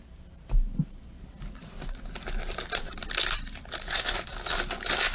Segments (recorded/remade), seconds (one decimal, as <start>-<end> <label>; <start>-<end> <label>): 0.0-5.1 recorded